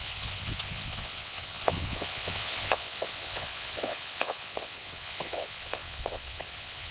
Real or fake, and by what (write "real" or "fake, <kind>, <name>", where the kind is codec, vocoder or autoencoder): fake, vocoder, WaveNeXt